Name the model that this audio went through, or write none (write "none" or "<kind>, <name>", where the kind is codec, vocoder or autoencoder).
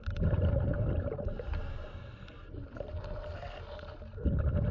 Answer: none